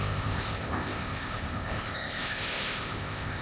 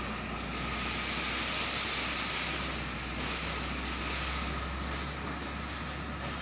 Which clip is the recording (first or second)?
second